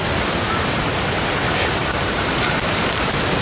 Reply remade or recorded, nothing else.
recorded